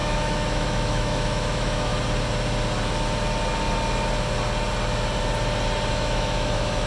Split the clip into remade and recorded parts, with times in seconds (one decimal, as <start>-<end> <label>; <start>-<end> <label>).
0.0-1.9 remade; 1.9-5.9 recorded; 5.9-6.9 remade